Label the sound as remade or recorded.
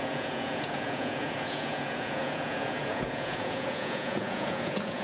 remade